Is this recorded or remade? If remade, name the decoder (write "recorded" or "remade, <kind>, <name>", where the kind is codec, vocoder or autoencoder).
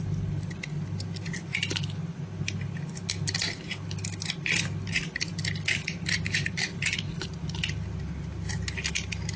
recorded